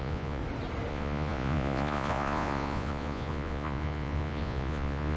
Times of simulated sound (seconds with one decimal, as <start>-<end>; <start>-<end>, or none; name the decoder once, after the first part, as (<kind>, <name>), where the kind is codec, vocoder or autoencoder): 0.0-0.4 (vocoder, Vocos); 0.9-5.2